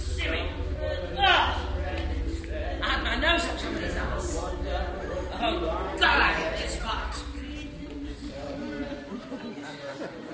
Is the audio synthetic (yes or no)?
no